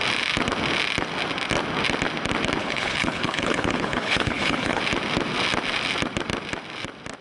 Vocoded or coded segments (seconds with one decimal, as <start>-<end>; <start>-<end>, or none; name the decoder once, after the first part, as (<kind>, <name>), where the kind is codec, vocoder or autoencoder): 2.6-4.8 (codec, HILCodec)